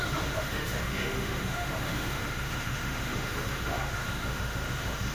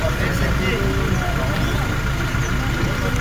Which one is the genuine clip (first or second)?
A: second